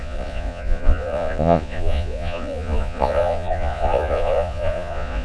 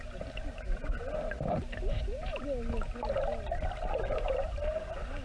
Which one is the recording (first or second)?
second